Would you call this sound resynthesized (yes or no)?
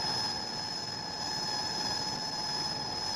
no